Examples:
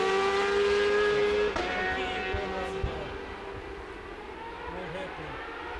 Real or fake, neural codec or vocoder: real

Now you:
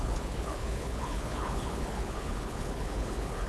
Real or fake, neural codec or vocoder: fake, codec, HILCodec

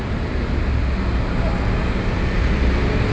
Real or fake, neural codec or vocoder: real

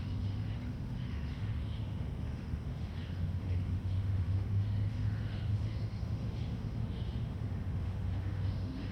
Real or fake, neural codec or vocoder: fake, autoencoder, DAC-VAE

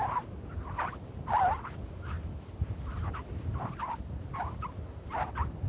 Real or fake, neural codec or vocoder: real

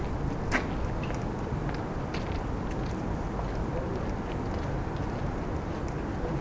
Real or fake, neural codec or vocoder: real